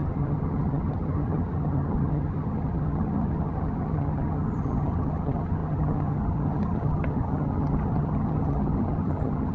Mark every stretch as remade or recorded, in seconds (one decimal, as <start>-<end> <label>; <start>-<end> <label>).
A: 0.0-9.5 remade

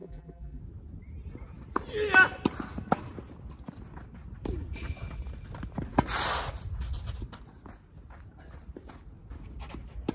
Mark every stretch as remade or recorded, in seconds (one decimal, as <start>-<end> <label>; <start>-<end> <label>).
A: 0.0-0.6 remade; 0.6-10.1 recorded